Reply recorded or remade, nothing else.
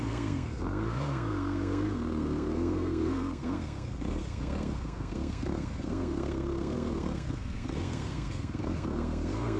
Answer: remade